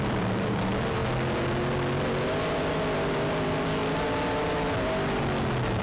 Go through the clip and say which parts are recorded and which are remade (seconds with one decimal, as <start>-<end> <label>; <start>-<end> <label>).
0.0-1.0 remade; 1.0-2.5 recorded; 2.5-3.8 remade; 3.8-5.8 recorded